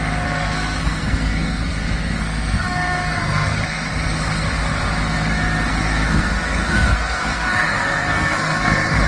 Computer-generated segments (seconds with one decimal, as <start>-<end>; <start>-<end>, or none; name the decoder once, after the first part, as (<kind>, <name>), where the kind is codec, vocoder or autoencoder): 0.0-4.7 (codec, SNAC); 5.7-9.1